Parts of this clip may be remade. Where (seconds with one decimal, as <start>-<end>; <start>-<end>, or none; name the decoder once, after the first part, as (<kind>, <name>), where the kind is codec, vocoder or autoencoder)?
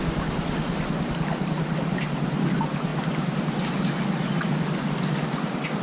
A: none